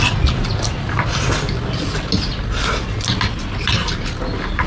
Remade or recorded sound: recorded